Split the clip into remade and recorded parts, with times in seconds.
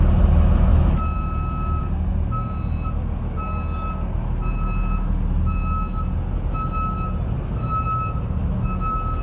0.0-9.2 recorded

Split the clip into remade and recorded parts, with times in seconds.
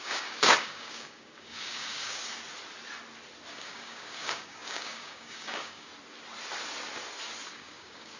0.0-2.2 remade; 2.2-3.5 recorded; 3.5-5.9 remade; 5.9-7.5 recorded; 7.5-8.2 remade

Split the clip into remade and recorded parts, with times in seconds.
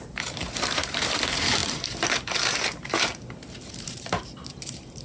0.0-5.0 remade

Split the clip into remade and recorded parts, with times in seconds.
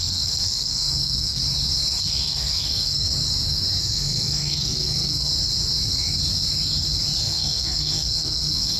0.0-1.4 remade; 1.4-2.0 recorded; 2.0-3.1 remade; 3.1-3.8 recorded; 3.8-5.3 remade; 5.3-7.2 recorded; 7.2-8.8 remade